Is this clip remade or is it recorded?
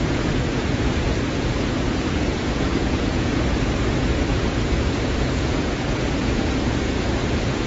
remade